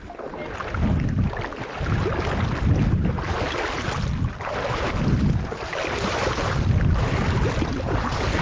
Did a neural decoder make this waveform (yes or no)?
no